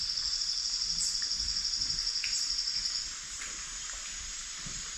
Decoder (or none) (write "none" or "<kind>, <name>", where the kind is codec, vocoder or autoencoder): vocoder, BigVGAN v2